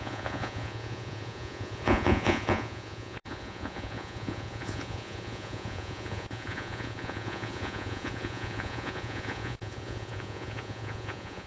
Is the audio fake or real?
fake